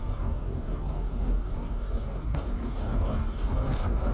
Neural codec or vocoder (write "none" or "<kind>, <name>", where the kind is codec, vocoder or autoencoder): codec, DAC